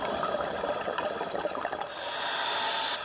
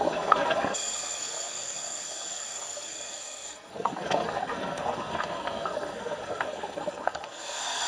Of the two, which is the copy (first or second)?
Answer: second